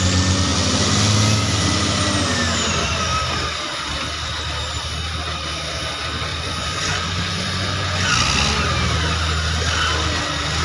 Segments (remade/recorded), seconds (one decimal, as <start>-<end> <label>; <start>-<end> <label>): 0.0-6.3 recorded; 6.3-8.1 remade; 8.1-10.6 recorded

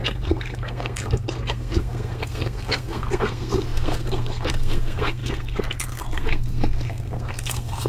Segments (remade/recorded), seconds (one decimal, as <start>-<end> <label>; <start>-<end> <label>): 0.0-7.9 remade

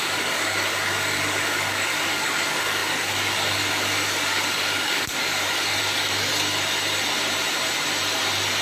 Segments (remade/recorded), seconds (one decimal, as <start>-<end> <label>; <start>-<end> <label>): 0.0-6.3 remade; 6.3-8.6 recorded